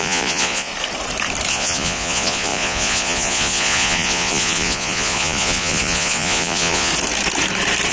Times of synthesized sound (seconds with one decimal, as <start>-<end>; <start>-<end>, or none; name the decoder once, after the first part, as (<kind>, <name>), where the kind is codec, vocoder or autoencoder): 0.0-0.7 (vocoder, Vocos); 1.5-6.9